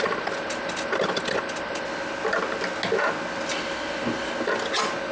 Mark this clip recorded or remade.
recorded